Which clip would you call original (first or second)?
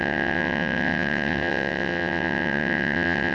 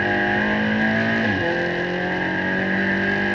second